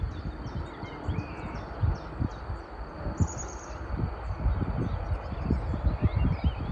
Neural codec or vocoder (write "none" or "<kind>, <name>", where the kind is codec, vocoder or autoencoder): none